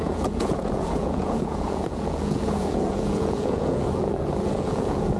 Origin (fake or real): fake